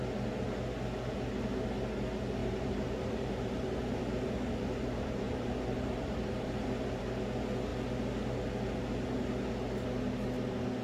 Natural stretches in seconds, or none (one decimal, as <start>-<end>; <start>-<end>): 0.0-2.4; 7.0-10.8